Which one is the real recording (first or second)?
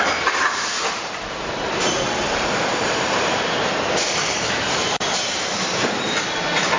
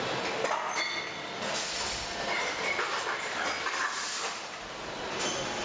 second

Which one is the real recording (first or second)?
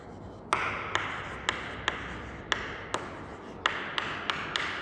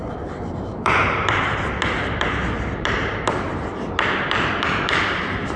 first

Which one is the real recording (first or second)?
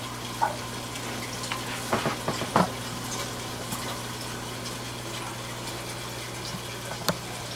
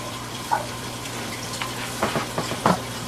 first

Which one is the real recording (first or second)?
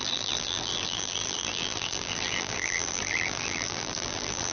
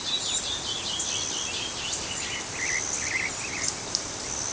second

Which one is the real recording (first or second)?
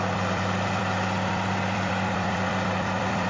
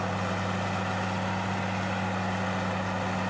second